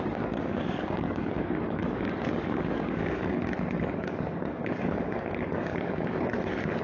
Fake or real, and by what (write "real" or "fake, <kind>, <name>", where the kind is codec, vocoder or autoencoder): fake, codec, DAC